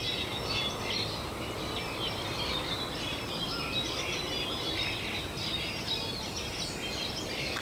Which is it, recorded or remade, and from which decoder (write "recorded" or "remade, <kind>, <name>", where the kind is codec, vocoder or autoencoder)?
recorded